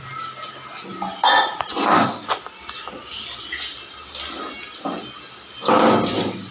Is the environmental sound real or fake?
real